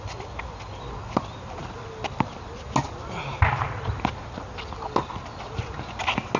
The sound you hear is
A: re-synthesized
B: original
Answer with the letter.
B